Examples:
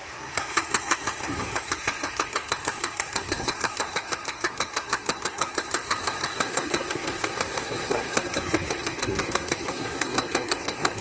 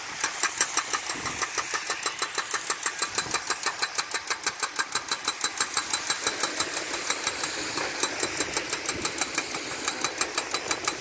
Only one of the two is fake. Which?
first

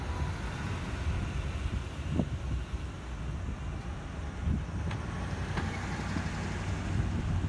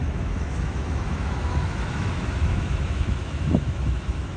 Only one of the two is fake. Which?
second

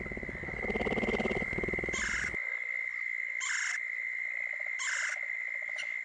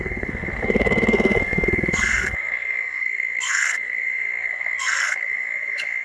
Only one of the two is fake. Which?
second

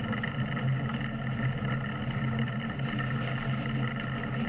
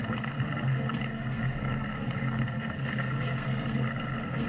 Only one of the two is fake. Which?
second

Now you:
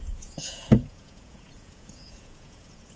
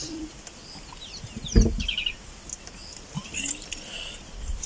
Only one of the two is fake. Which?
first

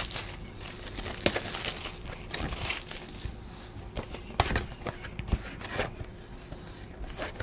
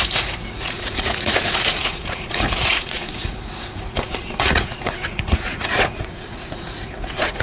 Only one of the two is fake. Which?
second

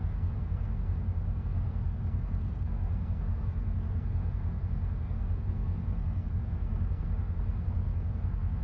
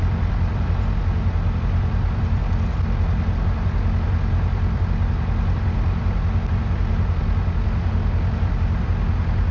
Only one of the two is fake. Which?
first